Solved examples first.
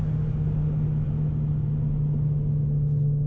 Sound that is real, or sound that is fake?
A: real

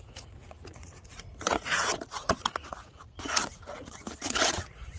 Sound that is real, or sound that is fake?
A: fake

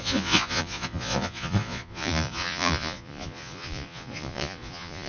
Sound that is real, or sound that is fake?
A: fake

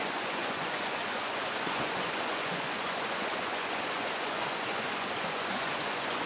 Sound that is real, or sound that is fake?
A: fake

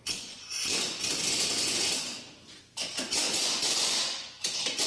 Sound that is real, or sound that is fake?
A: fake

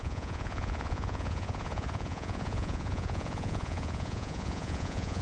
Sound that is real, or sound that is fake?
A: fake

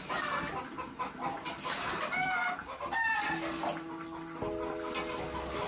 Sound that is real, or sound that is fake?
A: real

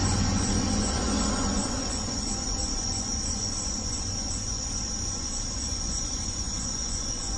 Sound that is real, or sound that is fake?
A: fake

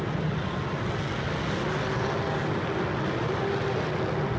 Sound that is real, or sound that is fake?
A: real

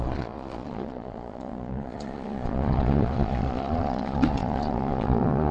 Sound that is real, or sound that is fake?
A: fake